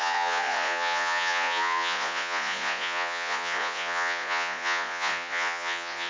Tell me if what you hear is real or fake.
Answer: fake